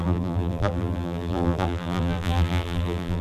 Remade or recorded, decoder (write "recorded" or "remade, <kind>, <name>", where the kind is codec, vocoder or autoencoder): remade, vocoder, BigVGAN v2